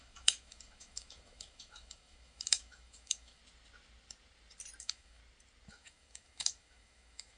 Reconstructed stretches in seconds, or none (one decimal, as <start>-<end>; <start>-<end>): 0.0-3.4; 4.8-5.2; 5.7-7.4